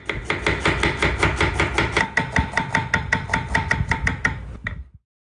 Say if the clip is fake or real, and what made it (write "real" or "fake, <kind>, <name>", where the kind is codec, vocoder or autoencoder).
real